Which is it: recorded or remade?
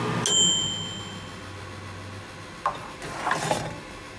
recorded